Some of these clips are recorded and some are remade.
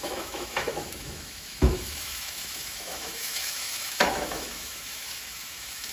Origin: remade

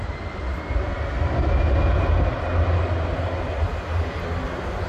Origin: recorded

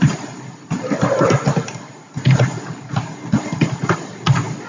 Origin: recorded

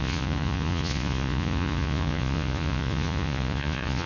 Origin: remade